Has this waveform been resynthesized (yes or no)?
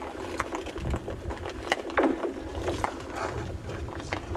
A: yes